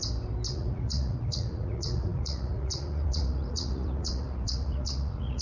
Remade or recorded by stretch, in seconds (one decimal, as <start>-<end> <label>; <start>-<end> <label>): 0.0-0.5 recorded; 0.5-5.4 remade

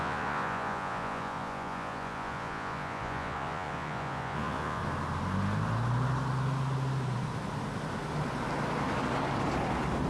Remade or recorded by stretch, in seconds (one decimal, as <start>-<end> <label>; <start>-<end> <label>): 0.0-4.8 remade; 4.8-10.1 recorded

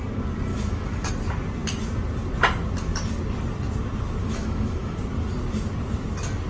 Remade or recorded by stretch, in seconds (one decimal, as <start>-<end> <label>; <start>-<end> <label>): 0.0-0.5 recorded; 0.5-1.1 remade; 1.1-4.2 recorded; 4.2-5.0 remade; 5.0-6.5 recorded